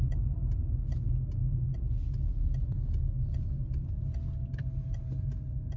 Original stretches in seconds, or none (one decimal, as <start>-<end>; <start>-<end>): 0.0-5.8